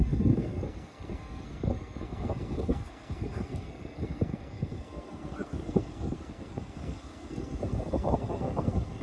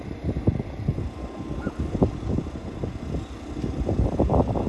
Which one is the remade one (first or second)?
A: first